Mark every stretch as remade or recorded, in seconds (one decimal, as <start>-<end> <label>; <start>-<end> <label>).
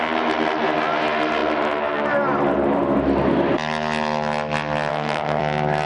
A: 0.0-4.9 recorded; 4.9-5.4 remade; 5.4-5.9 recorded